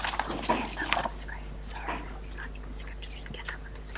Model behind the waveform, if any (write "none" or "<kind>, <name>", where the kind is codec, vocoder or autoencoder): none